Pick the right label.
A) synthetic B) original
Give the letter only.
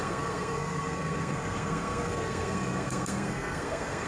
A